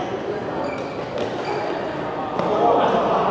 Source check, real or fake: real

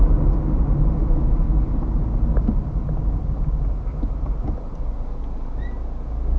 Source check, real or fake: real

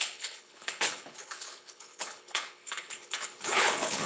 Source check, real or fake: fake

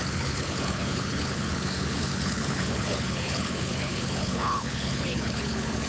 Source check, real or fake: fake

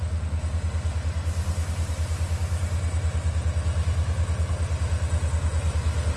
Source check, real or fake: real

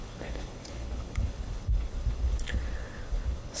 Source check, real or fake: fake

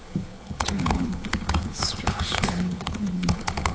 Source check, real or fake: fake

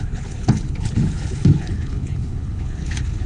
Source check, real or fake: fake